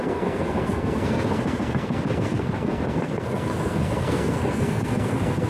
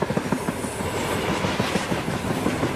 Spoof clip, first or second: first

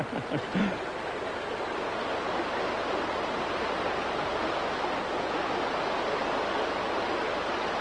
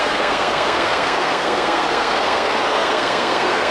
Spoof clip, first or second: second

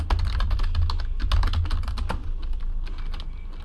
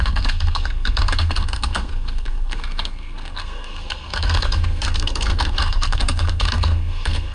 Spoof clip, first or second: second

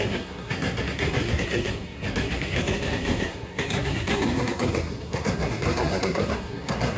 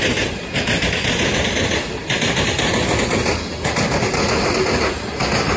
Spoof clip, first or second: first